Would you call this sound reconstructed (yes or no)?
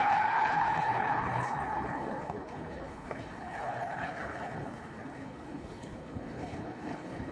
yes